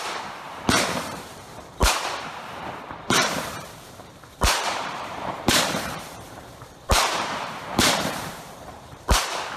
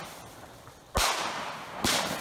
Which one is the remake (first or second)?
first